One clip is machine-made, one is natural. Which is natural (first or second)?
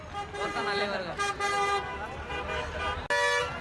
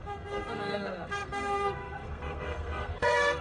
first